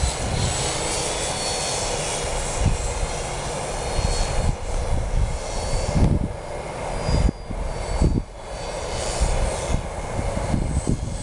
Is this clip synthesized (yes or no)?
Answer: no